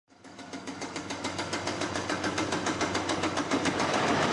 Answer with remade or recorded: remade